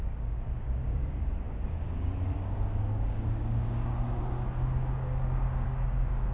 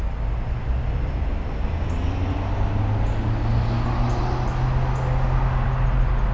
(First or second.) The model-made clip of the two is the first